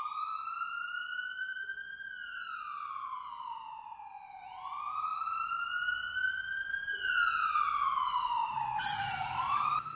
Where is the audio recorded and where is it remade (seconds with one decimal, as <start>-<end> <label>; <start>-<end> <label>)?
0.0-10.0 recorded